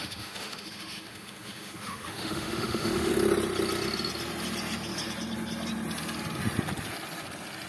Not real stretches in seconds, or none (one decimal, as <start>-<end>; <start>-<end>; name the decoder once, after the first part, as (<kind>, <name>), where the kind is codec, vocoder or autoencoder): 0.0-3.1 (autoencoder, DAC-VAE)